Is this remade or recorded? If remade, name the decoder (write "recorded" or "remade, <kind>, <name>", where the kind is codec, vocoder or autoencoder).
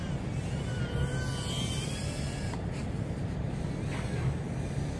recorded